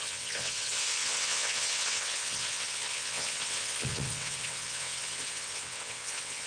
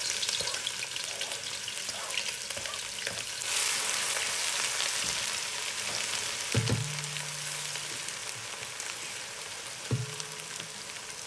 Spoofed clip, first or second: first